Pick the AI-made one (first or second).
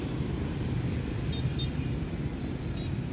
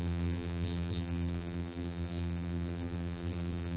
second